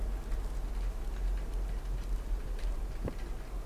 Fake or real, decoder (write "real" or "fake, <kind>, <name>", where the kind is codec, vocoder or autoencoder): real